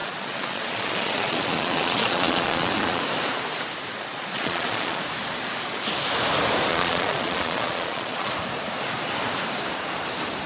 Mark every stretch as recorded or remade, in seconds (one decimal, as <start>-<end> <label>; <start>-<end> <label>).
0.0-3.0 remade; 3.0-4.1 recorded; 4.1-5.0 remade; 5.0-6.7 recorded; 6.7-8.3 remade; 8.3-10.5 recorded